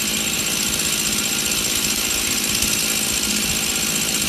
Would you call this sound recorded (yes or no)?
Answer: yes